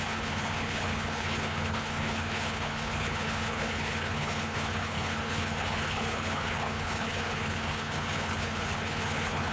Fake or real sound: fake